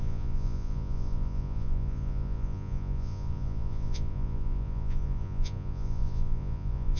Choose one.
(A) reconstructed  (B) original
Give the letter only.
A